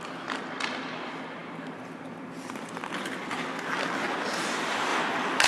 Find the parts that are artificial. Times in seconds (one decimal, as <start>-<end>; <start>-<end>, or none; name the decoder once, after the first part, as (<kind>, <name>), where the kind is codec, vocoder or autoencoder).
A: none